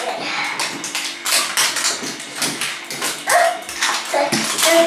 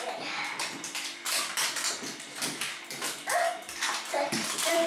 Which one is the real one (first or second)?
first